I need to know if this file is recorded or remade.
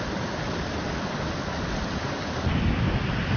recorded